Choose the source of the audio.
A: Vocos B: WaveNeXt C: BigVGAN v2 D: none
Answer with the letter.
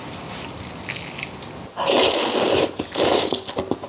D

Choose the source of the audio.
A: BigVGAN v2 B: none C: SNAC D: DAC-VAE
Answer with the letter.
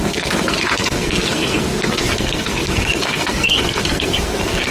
C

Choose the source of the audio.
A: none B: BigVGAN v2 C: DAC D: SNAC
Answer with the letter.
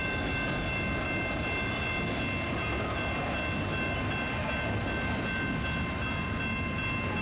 A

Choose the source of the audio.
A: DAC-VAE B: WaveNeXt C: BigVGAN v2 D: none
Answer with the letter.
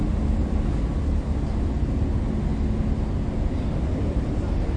D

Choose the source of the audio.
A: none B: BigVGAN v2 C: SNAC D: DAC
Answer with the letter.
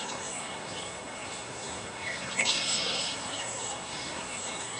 C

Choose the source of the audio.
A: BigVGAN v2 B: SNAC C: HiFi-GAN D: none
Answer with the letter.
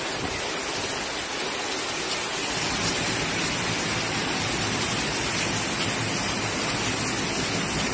D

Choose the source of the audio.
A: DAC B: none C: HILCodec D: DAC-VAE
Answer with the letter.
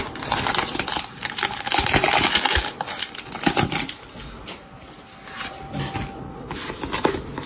B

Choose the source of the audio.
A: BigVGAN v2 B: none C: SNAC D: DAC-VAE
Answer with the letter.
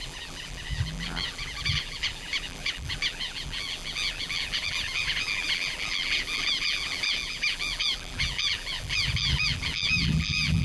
A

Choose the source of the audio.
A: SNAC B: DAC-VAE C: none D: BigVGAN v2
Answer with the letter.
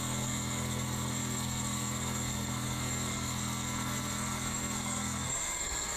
A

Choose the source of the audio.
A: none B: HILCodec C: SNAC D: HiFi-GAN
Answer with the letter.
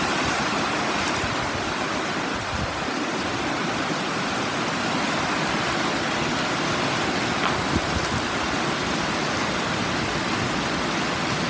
A